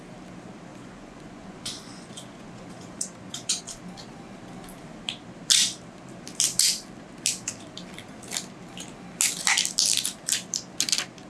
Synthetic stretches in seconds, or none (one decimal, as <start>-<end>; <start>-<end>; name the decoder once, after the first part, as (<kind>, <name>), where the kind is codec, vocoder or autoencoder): 0.7-3.6 (vocoder, Vocos)